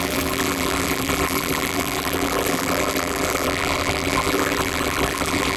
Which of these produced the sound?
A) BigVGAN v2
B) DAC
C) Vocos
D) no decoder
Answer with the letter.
A